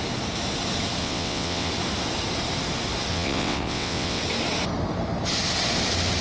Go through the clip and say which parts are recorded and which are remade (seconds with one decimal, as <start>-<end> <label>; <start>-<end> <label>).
0.0-1.0 recorded; 1.0-1.7 remade; 1.7-3.1 recorded; 3.1-4.2 remade; 4.2-6.2 recorded

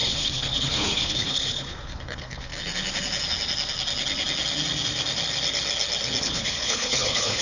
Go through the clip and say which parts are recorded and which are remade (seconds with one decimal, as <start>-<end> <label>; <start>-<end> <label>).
0.0-2.5 remade; 2.5-6.2 recorded; 6.2-7.4 remade

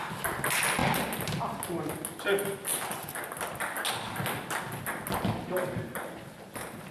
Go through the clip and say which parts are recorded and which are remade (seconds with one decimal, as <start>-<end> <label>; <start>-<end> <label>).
0.0-6.9 recorded

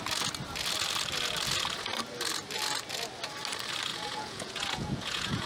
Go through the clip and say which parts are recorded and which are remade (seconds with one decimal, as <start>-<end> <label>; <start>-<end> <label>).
0.0-3.9 recorded; 3.9-5.5 remade